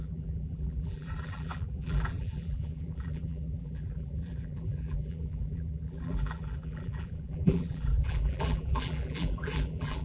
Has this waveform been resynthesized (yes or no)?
yes